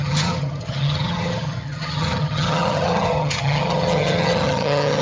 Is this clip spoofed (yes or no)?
yes